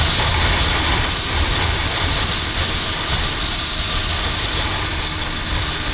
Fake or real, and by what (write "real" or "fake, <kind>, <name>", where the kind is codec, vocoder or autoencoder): real